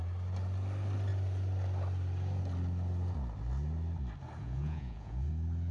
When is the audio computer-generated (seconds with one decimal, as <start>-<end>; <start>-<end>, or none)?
4.4-5.3